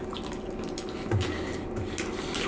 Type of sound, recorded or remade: recorded